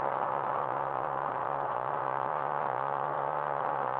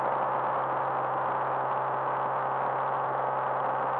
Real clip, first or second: second